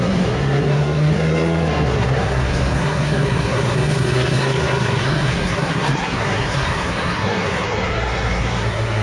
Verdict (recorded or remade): remade